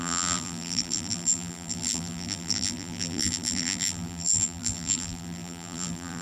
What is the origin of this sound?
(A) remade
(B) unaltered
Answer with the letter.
A